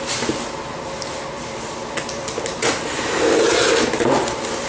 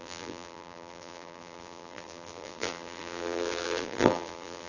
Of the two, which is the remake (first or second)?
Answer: second